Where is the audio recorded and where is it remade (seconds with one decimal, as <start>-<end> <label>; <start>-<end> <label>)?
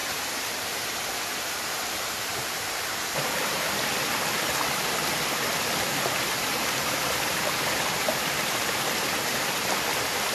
0.0-3.7 remade; 3.7-6.6 recorded; 6.6-9.1 remade; 9.1-10.3 recorded